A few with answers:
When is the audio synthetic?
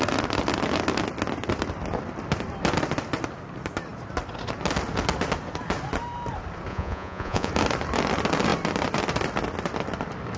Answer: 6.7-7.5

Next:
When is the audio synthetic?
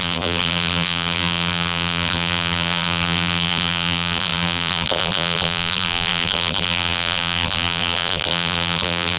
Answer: 0.0-9.2